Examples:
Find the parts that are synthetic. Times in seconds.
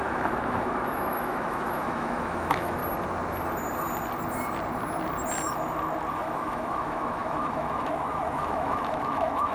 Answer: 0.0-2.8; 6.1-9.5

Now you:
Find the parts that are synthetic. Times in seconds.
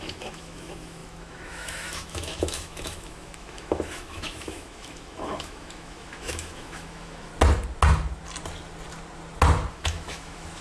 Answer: 0.0-7.3; 9.7-10.6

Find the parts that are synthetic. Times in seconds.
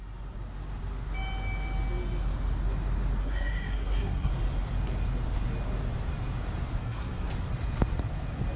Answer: 3.2-4.3; 6.8-7.3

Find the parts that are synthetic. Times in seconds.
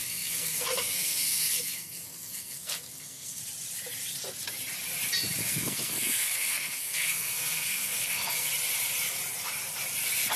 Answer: 0.0-3.4; 5.4-8.5